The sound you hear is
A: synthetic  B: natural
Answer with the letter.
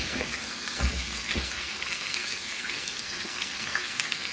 A